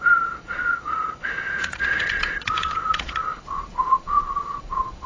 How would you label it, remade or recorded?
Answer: remade